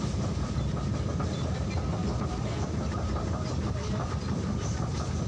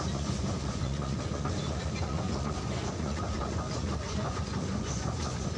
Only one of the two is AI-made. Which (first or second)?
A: second